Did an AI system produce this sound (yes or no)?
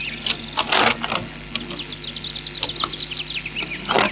no